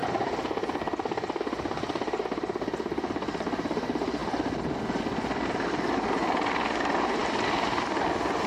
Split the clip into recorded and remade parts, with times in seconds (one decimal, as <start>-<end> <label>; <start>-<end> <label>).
0.0-8.5 recorded